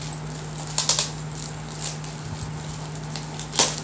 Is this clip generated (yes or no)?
no